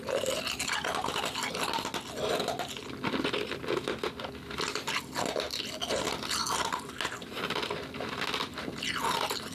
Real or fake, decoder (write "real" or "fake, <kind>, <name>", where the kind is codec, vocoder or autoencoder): real